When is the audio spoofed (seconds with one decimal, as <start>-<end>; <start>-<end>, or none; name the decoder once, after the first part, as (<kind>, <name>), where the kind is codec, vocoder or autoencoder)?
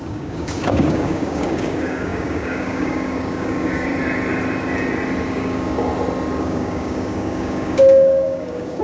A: 0.0-3.9 (codec, DAC); 5.3-5.9; 6.4-8.8